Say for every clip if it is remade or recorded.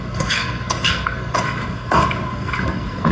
remade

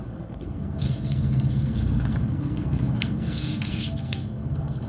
remade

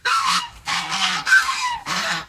remade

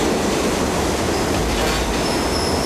recorded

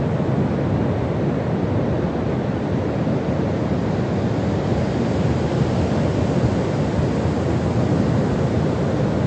recorded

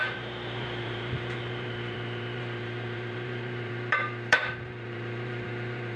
remade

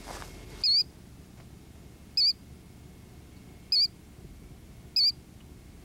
recorded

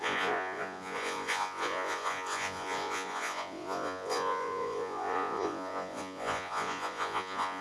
remade